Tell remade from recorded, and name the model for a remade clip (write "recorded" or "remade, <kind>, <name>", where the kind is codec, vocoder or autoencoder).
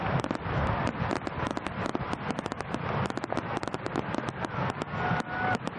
recorded